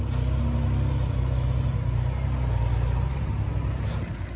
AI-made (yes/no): no